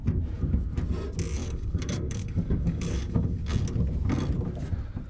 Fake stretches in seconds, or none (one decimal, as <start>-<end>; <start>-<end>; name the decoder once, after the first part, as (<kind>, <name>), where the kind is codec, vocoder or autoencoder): 1.4-3.4 (codec, DAC)